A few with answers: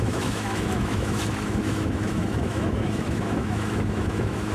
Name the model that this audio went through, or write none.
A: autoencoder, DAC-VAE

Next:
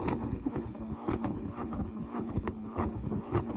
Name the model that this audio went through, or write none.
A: codec, HILCodec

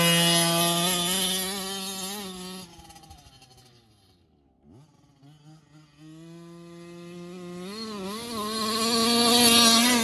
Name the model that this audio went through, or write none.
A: none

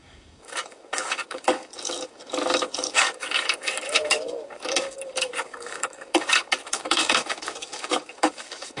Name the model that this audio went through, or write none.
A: codec, DAC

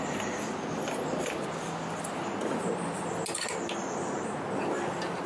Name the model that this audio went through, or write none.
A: none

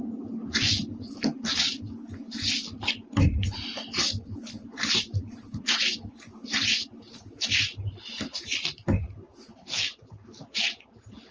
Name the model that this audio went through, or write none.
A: none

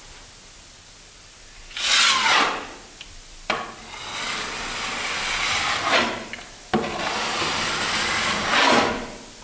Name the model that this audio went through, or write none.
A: none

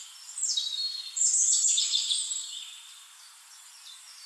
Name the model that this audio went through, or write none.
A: vocoder, BigVGAN v2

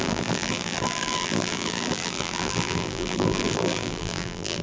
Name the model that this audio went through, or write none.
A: vocoder, BigVGAN v2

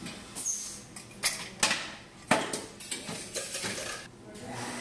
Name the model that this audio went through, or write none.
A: none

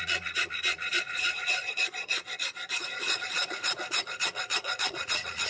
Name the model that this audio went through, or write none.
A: vocoder, Vocos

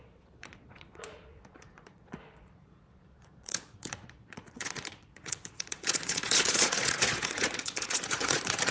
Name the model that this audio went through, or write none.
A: vocoder, Vocos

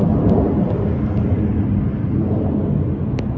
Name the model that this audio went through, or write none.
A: none